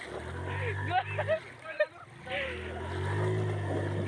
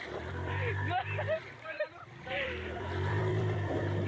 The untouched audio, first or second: first